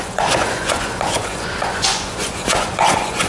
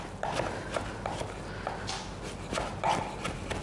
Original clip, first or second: second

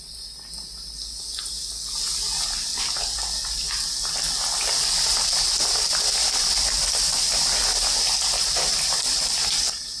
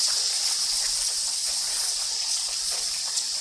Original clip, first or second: first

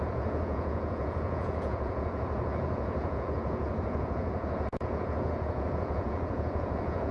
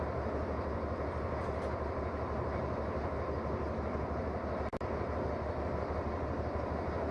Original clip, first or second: second